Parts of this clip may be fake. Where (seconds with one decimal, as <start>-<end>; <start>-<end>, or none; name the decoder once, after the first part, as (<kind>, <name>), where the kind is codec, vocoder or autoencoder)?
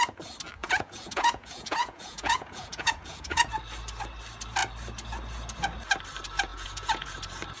0.6-3.5 (vocoder, Vocos); 6.5-7.1